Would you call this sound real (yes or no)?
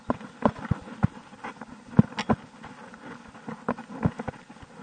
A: yes